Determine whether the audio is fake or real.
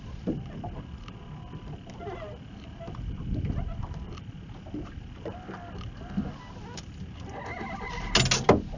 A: real